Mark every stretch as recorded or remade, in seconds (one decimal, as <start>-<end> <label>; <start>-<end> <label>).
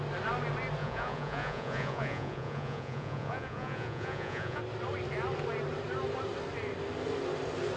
0.0-0.8 recorded; 0.8-4.6 remade; 4.6-7.8 recorded